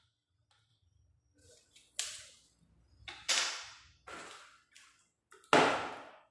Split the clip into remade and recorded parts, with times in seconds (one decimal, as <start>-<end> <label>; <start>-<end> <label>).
0.0-6.3 recorded